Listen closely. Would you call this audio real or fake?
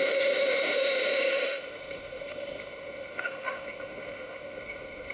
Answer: fake